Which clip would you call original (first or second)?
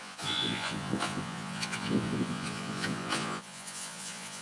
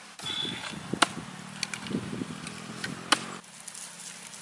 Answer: second